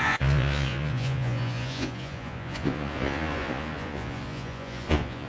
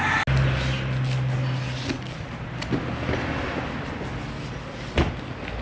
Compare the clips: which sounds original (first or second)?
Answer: second